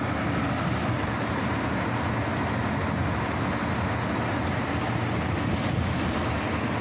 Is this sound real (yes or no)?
yes